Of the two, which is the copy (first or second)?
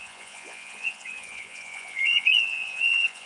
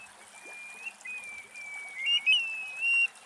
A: first